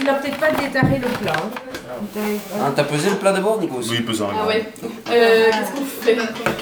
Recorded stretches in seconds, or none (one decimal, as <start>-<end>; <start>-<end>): 0.0-1.1; 3.7-6.6